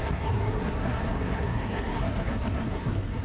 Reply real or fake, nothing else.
fake